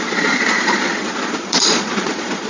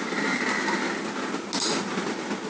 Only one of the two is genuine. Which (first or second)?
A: second